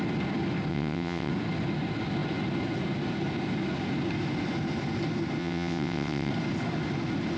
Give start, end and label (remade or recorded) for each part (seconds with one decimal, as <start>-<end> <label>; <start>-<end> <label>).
0.0-0.7 recorded; 0.7-1.3 remade; 1.3-5.4 recorded; 5.4-6.3 remade; 6.3-7.4 recorded